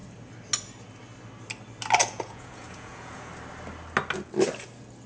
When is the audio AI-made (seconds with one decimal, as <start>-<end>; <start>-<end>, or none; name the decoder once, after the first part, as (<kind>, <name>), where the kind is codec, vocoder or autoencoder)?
2.0-3.3 (vocoder, Vocos)